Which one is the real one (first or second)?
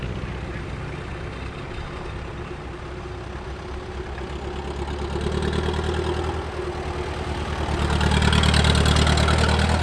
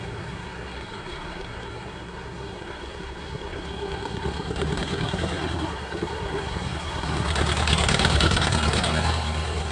first